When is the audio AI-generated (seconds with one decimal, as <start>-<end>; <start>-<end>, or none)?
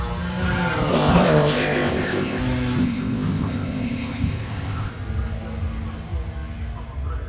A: 0.9-2.4; 2.8-4.9